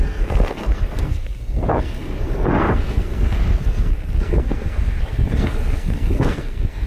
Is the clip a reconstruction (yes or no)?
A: yes